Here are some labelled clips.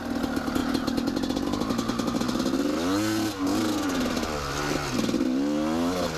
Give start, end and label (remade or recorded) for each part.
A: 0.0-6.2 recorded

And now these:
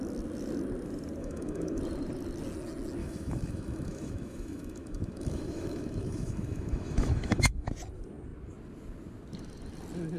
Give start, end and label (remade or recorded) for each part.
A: 0.0-1.2 recorded; 1.2-1.8 remade; 1.8-3.0 recorded; 3.0-7.7 remade; 7.7-10.2 recorded

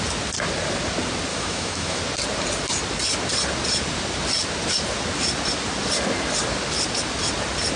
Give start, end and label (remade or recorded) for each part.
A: 0.0-1.3 recorded; 1.3-2.0 remade; 2.0-7.8 recorded